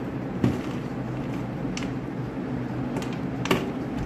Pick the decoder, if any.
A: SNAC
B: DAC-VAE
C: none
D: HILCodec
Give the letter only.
C